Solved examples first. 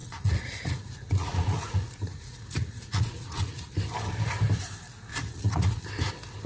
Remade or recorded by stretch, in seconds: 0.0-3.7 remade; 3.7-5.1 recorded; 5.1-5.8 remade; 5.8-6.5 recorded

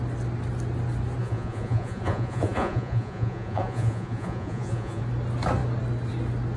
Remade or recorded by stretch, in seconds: 0.0-1.2 recorded; 1.2-5.0 remade; 5.0-6.6 recorded